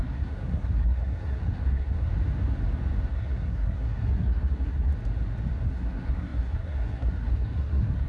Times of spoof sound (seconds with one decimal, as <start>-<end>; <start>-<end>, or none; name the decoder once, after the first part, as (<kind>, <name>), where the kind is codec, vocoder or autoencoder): 0.0-2.1 (codec, SNAC); 3.1-4.9; 5.7-8.1